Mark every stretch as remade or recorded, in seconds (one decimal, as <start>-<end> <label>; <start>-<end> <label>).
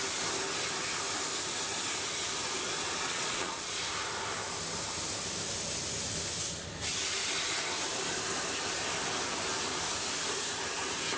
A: 0.0-3.0 recorded; 3.0-3.8 remade; 3.8-11.2 recorded